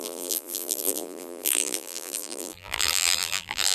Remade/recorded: remade